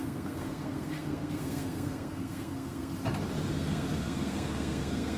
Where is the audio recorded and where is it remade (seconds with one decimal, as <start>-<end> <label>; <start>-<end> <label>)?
0.0-2.9 remade; 2.9-3.5 recorded; 3.5-5.2 remade